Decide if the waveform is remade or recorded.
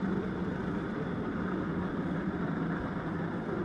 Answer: remade